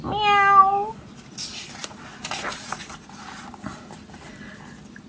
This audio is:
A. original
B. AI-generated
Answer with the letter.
A